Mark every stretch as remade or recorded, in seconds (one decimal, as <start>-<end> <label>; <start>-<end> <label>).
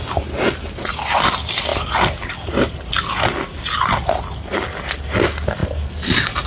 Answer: 0.0-6.5 recorded